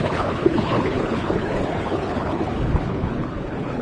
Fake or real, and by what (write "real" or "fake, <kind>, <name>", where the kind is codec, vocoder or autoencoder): fake, codec, HILCodec